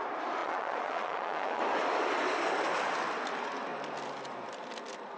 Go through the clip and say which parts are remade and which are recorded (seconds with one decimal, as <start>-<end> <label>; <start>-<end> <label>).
0.0-0.4 recorded; 0.4-1.6 remade; 1.6-5.2 recorded